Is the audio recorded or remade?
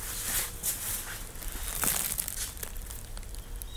recorded